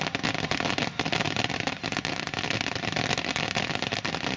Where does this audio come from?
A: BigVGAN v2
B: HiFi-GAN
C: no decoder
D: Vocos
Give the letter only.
C